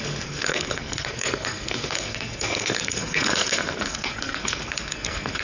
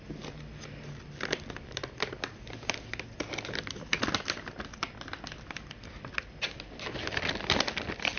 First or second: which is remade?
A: first